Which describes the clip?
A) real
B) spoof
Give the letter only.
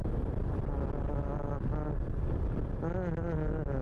A